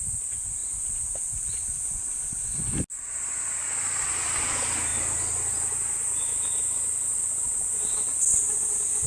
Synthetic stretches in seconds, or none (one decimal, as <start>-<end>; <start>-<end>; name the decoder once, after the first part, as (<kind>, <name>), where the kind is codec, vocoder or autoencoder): 8.3-9.1 (vocoder, BigVGAN v2)